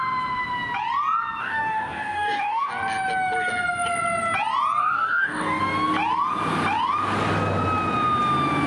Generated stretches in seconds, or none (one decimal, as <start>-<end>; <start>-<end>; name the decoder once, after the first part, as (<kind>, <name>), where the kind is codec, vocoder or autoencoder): 1.4-2.7 (codec, DAC); 4.8-5.6